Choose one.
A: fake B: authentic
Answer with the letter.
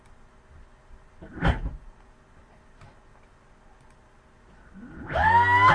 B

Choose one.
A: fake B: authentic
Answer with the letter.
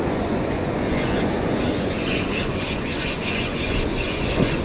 A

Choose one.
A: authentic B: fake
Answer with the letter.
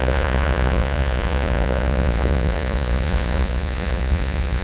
B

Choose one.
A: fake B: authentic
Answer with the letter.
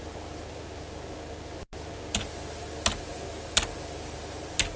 B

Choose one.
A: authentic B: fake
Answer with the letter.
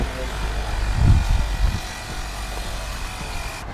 A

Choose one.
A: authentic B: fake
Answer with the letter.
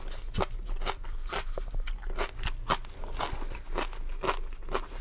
A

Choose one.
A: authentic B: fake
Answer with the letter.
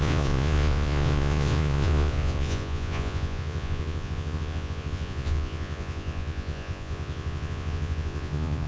B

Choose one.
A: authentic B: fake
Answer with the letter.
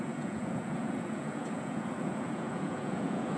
B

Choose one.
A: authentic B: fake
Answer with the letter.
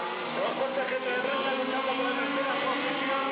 A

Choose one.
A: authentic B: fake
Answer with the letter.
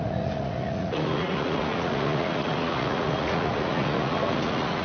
B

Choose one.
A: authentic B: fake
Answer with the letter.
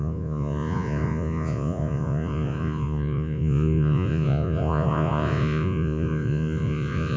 B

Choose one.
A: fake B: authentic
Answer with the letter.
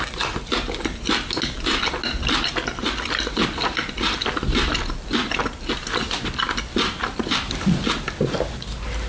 B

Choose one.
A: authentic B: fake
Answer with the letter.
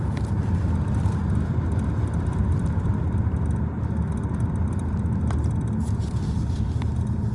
A